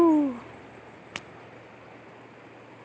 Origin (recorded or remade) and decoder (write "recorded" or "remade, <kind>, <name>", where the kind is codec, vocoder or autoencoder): recorded